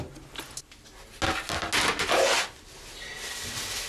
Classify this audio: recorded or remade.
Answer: recorded